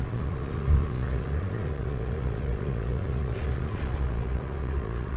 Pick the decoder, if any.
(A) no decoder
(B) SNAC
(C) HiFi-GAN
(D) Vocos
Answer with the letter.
D